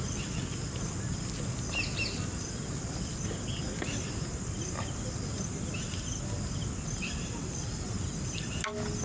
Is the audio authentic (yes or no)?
yes